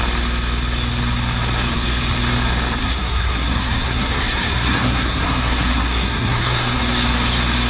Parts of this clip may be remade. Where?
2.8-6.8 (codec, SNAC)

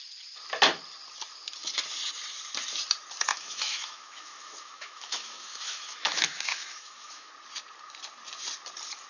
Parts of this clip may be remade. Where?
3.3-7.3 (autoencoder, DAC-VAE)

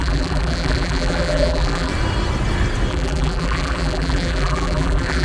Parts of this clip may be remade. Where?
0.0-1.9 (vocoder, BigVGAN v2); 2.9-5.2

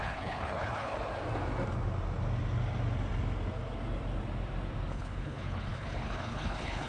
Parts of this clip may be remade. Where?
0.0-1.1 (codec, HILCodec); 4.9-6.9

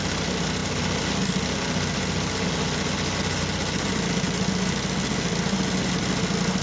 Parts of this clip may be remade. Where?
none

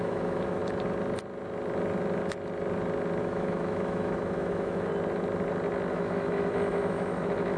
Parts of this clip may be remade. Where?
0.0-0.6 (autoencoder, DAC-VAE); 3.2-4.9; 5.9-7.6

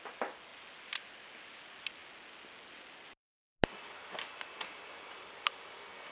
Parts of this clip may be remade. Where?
none